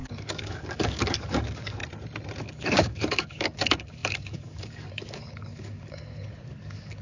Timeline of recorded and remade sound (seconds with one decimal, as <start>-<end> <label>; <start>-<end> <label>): 0.0-1.8 remade; 1.8-2.4 recorded; 2.4-7.0 remade